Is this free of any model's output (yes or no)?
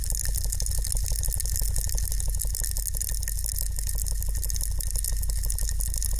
yes